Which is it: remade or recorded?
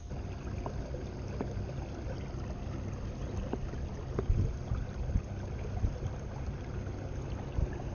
recorded